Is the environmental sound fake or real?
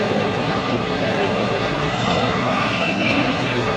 fake